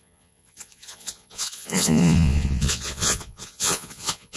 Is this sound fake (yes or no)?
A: yes